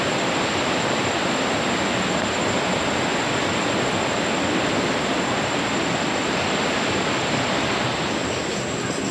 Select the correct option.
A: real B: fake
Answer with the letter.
A